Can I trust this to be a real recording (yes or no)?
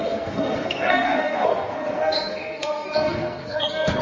no